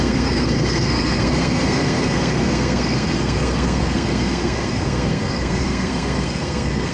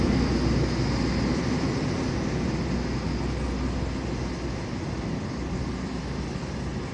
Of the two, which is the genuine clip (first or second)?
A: second